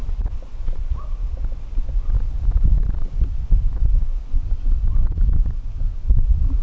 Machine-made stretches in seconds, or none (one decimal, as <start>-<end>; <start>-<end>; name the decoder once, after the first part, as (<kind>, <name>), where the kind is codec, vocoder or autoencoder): none